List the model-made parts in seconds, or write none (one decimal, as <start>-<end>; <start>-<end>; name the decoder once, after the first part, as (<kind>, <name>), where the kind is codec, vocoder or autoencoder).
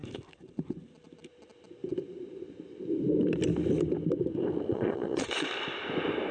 4.7-5.5 (vocoder, Vocos)